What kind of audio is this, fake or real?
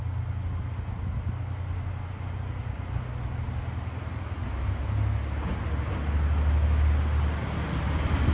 real